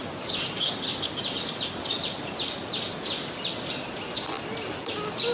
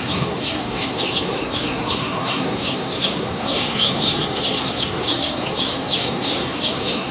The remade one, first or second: second